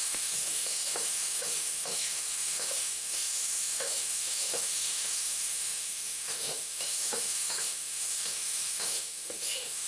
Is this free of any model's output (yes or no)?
no